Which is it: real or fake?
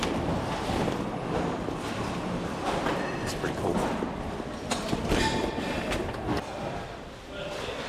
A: real